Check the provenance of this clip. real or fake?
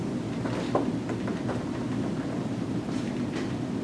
fake